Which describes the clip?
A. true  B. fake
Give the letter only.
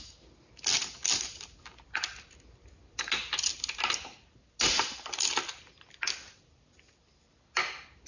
A